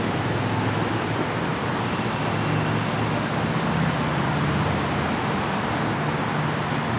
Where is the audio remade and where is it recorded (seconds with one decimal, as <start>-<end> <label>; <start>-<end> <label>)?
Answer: 0.0-7.0 recorded